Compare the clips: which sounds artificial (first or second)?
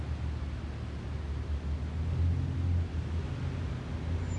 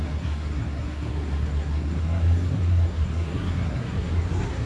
second